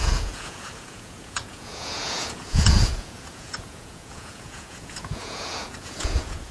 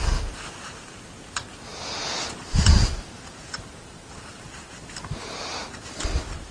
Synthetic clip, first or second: first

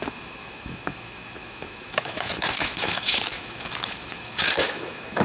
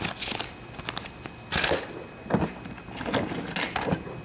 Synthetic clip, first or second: first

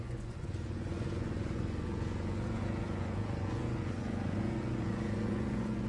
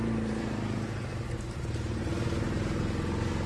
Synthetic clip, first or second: first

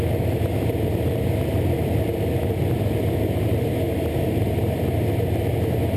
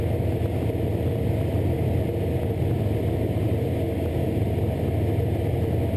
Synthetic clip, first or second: first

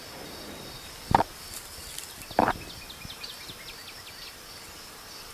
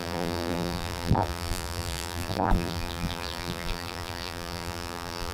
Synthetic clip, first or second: second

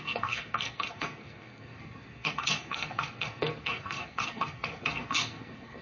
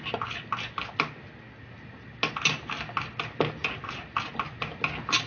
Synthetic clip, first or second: first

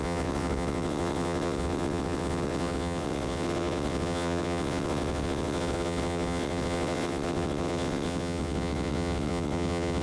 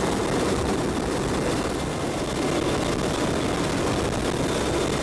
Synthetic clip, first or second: first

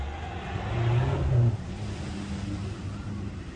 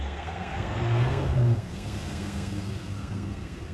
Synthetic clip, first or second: second